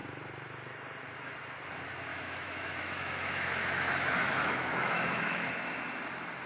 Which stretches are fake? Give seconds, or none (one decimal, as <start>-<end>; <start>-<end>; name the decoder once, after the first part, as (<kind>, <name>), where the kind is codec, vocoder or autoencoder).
2.1-5.5 (autoencoder, DAC-VAE)

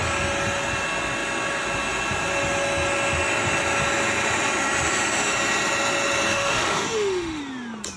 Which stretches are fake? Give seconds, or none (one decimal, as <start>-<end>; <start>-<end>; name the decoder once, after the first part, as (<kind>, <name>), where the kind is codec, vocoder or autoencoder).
6.3-7.4 (autoencoder, DAC-VAE)

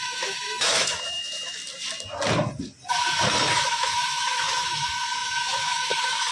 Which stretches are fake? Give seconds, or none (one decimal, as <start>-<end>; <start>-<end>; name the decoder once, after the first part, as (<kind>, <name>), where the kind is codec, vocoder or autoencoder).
0.0-1.6 (autoencoder, DAC-VAE); 3.5-6.3

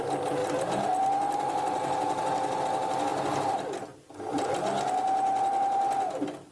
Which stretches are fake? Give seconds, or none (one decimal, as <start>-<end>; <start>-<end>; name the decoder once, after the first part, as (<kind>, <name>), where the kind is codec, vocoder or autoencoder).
none

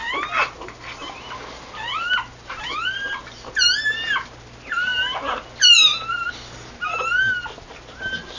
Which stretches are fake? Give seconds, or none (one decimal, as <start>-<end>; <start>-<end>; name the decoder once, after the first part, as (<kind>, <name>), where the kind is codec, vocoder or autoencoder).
none

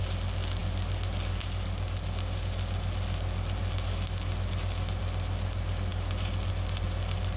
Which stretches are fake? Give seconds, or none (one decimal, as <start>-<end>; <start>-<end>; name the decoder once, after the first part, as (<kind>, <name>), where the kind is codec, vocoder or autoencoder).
none

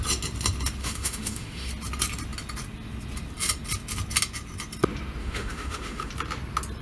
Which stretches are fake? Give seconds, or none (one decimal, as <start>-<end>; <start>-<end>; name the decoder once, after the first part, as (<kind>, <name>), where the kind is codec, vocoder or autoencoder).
0.8-1.7 (autoencoder, DAC-VAE); 5.2-6.1

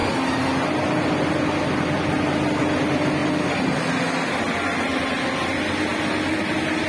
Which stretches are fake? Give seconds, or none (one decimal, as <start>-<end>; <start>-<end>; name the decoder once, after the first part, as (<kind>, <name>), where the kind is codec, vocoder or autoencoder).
none